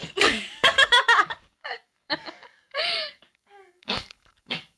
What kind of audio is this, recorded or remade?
remade